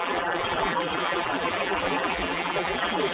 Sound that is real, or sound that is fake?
fake